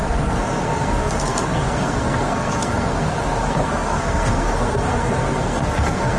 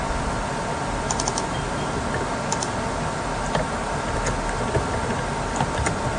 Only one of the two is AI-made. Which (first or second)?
first